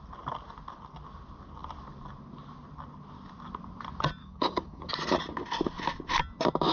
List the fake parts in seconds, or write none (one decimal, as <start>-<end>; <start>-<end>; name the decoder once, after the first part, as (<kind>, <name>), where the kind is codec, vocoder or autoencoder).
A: 4.2-4.9 (codec, DAC)